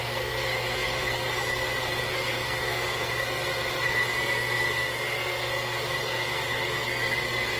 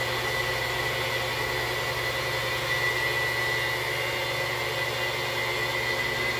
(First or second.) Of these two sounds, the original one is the second